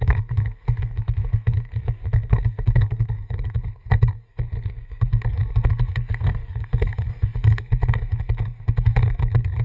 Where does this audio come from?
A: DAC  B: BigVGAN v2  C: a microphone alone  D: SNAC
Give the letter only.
D